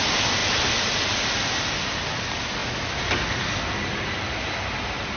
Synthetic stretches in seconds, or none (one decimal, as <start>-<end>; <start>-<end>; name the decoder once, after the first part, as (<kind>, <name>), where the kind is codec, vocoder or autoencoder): none